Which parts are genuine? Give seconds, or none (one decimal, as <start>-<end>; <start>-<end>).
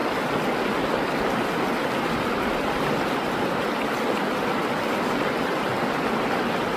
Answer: 0.0-6.8